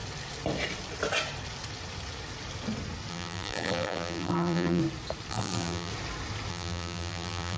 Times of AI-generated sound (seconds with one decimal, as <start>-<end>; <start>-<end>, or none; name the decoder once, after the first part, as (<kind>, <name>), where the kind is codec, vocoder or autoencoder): 3.1-4.8 (vocoder, BigVGAN v2); 5.3-5.9; 6.5-7.6